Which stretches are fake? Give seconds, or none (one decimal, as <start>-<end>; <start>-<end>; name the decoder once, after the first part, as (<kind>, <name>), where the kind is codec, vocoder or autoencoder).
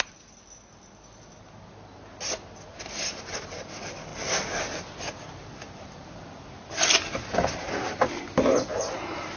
4.1-8.1 (vocoder, BigVGAN v2)